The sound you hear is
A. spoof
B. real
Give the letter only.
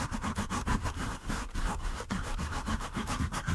A